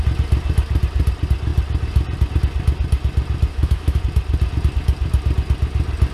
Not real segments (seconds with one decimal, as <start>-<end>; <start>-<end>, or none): 3.5-4.0